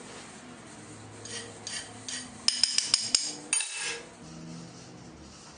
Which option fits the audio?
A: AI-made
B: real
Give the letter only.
B